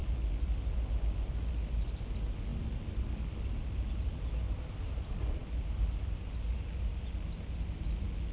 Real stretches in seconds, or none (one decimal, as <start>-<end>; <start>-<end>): 0.0-5.4; 6.4-8.3